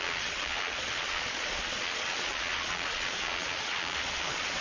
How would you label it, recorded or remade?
remade